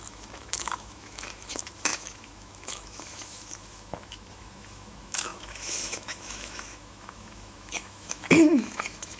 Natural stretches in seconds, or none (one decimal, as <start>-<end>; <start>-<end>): none